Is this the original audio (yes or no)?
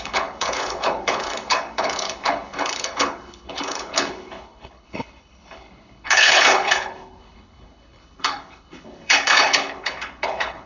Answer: no